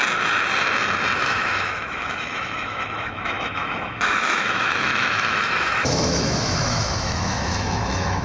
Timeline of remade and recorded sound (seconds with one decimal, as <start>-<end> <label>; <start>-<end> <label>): 0.0-1.2 recorded; 1.2-8.2 remade